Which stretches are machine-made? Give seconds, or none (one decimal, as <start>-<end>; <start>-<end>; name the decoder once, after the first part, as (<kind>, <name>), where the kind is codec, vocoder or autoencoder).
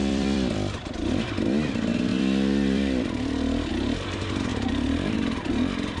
0.0-1.3 (vocoder, BigVGAN v2); 2.1-3.7; 4.5-5.5